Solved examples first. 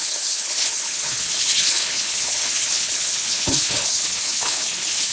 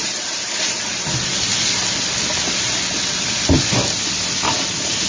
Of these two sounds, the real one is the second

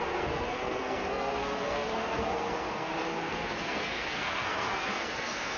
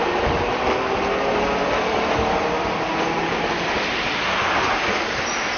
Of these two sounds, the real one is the second